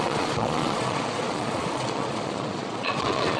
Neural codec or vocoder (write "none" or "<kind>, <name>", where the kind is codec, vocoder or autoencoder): vocoder, Vocos